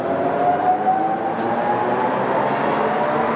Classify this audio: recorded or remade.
recorded